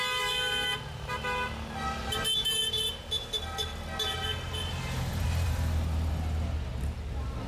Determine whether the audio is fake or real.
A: real